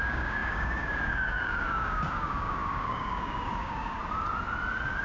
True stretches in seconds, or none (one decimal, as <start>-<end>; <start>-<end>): 4.0-5.0